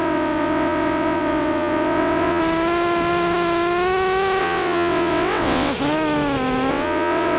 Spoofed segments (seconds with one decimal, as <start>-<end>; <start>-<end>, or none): 0.0-2.4; 4.4-5.7; 6.7-7.4